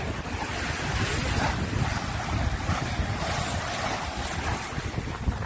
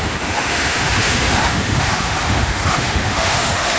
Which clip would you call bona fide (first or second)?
first